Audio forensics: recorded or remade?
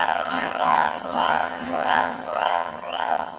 remade